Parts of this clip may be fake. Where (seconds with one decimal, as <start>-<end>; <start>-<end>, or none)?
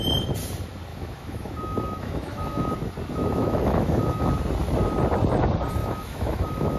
0.9-2.7; 3.2-4.3; 5.8-6.8